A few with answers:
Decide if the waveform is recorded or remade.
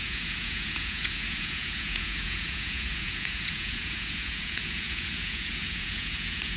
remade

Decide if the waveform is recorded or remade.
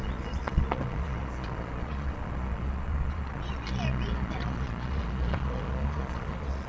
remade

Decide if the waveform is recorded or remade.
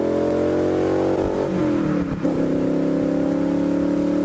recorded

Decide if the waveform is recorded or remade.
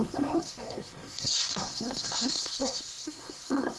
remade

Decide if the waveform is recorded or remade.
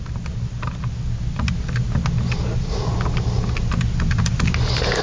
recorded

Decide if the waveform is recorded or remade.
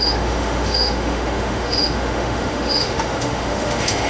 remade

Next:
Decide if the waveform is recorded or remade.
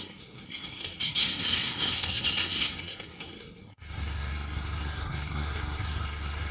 remade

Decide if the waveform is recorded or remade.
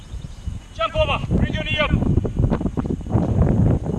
remade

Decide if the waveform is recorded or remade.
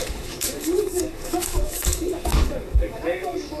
remade